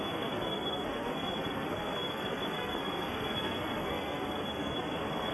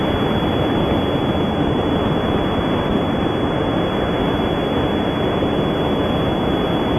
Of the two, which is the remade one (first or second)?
first